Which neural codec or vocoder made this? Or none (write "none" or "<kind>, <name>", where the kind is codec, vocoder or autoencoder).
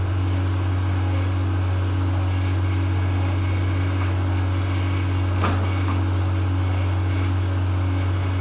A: none